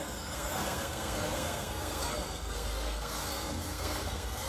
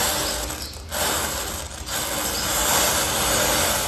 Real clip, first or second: second